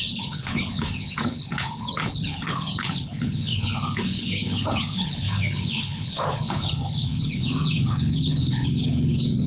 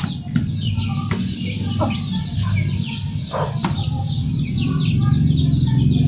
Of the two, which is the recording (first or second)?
second